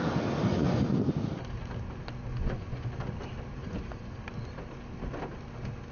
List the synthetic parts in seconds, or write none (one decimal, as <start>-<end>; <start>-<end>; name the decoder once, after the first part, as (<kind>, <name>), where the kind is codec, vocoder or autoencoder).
0.5-1.1 (vocoder, Vocos); 2.3-2.9; 3.6-4.2